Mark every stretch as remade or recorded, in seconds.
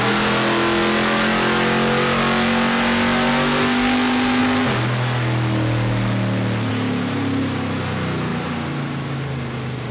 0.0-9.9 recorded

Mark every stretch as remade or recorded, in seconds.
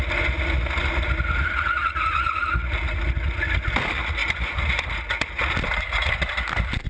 0.0-6.9 recorded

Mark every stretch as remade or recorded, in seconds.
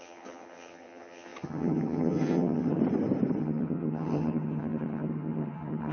0.0-2.8 remade; 2.8-3.4 recorded; 3.4-5.9 remade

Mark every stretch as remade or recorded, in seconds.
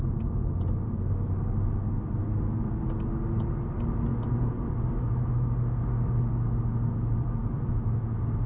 0.0-8.5 recorded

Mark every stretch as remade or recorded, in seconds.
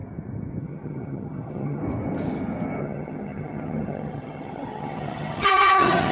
0.0-0.6 recorded; 0.6-1.8 remade; 1.8-2.8 recorded; 2.8-6.1 remade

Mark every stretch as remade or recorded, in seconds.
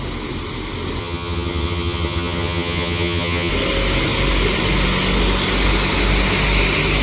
0.0-1.0 recorded; 1.0-3.5 remade; 3.5-7.0 recorded